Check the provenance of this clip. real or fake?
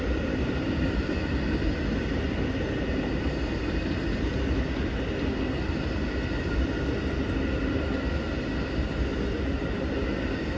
real